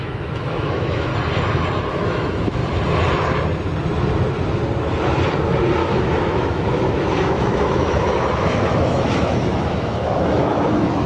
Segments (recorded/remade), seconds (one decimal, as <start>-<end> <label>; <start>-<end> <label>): 0.0-1.1 remade; 1.1-1.9 recorded; 1.9-2.6 remade; 2.6-6.0 recorded; 6.0-11.1 remade